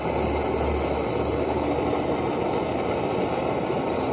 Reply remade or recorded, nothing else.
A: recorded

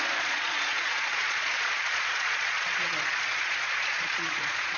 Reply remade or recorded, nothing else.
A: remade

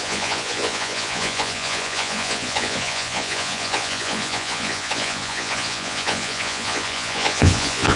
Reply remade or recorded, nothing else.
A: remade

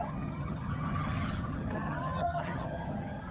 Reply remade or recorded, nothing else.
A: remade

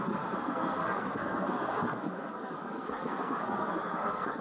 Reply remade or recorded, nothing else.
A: remade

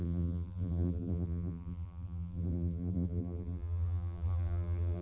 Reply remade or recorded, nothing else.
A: remade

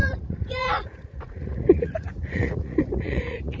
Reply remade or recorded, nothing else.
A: remade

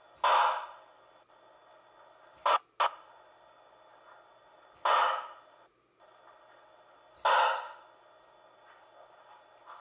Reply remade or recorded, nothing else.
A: recorded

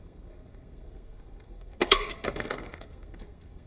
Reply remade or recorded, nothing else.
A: remade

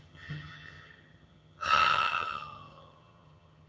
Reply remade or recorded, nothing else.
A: remade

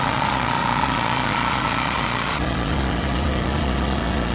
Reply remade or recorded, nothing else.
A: remade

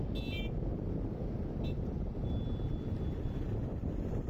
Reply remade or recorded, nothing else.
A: recorded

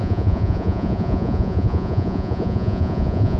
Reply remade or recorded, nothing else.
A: remade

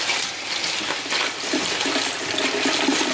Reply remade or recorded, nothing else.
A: recorded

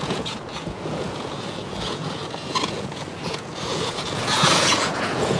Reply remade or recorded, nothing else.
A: remade